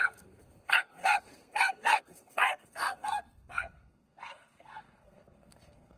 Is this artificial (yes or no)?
yes